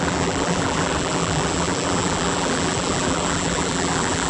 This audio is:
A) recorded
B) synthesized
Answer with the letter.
B